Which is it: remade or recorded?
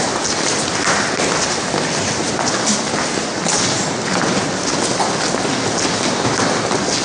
recorded